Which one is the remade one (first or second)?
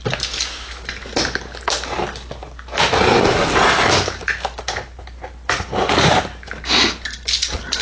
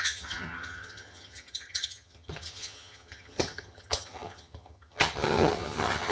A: second